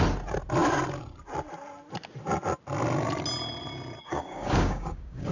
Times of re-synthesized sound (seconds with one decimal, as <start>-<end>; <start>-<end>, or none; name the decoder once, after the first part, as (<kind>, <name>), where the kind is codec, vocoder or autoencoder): 4.0-5.3 (codec, DAC)

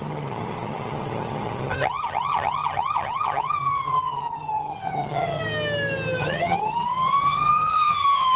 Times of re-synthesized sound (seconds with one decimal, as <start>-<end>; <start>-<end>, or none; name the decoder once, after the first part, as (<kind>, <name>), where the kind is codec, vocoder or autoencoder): 0.0-5.4 (vocoder, HiFi-GAN); 6.2-8.4

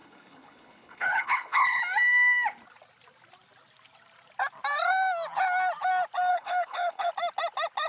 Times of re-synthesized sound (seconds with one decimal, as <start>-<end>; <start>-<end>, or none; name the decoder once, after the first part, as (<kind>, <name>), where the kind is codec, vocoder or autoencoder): 0.0-1.8 (codec, HILCodec); 6.3-7.1

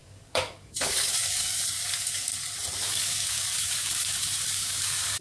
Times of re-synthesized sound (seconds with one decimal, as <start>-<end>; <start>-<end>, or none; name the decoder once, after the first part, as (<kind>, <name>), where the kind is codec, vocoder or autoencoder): 0.0-2.3 (codec, DAC); 2.8-5.2

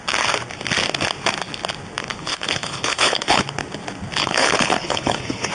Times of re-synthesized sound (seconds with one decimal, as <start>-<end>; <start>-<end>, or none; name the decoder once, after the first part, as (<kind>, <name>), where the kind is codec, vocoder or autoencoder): 2.0-3.4 (codec, HILCodec); 4.2-5.5

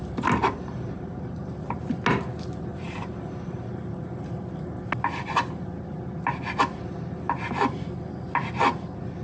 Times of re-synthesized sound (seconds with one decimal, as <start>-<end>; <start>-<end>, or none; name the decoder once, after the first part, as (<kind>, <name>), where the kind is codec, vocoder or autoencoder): 0.4-1.8 (vocoder, BigVGAN v2); 2.7-3.7

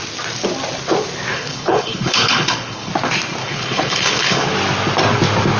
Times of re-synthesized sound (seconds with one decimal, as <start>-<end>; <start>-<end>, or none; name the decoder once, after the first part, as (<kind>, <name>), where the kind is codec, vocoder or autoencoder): 1.3-2.9 (codec, HILCodec); 3.4-4.5